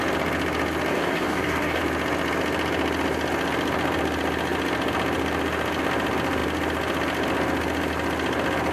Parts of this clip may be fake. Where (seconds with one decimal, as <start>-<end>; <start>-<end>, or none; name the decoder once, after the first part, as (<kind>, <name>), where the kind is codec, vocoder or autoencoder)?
0.9-1.8 (codec, DAC)